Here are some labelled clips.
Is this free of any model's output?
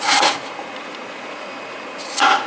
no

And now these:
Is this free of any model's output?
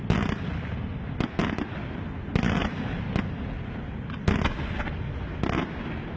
yes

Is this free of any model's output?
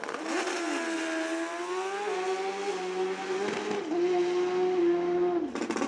yes